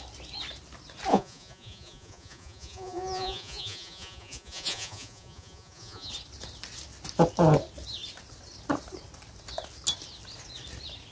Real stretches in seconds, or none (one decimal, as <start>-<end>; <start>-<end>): 0.0-1.1; 6.1-11.1